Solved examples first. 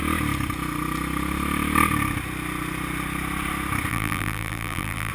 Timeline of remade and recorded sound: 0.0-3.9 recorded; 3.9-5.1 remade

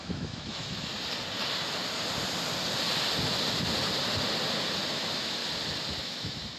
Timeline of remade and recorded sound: 0.0-0.9 remade; 0.9-4.9 recorded; 4.9-5.4 remade; 5.4-6.0 recorded; 6.0-6.6 remade

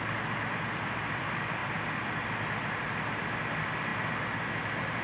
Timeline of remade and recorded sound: 0.0-5.0 recorded

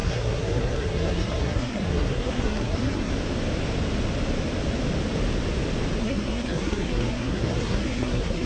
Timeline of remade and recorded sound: 0.0-3.1 remade; 3.1-6.0 recorded; 6.0-8.5 remade

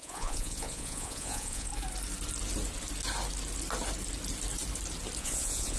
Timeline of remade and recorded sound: 0.0-1.7 remade; 1.7-5.2 recorded; 5.2-5.8 remade

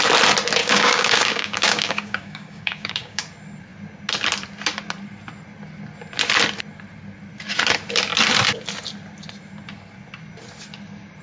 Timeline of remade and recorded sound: 0.0-0.6 recorded; 0.6-3.2 remade; 3.2-11.2 recorded